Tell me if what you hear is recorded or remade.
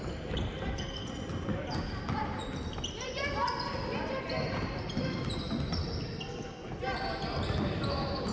recorded